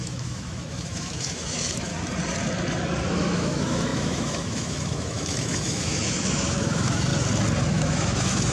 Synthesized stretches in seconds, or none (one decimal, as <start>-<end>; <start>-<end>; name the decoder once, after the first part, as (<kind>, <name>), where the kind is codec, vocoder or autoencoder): 0.0-1.9 (autoencoder, DAC-VAE); 3.1-7.1; 7.7-8.5